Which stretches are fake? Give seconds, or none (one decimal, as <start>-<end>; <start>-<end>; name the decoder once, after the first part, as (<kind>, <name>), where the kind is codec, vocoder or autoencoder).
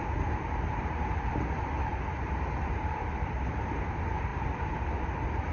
1.9-3.8 (vocoder, BigVGAN v2)